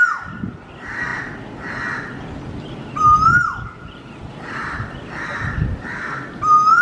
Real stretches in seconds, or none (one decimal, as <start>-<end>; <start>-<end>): 0.0-6.8